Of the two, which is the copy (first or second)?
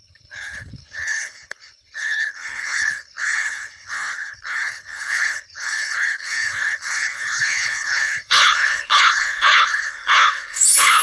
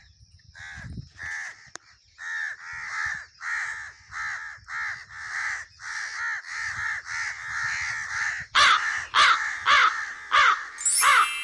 first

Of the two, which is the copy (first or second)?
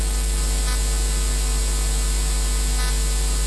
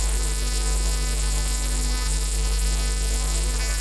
second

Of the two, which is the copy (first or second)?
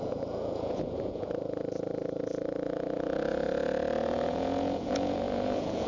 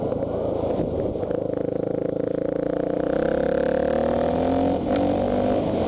first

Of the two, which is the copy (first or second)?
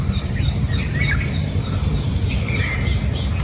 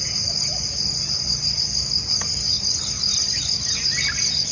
first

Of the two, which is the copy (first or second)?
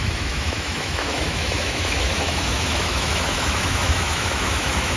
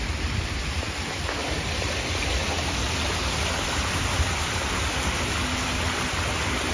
first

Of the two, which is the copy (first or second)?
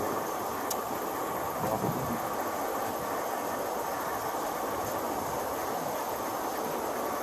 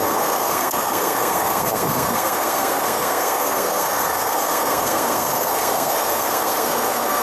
second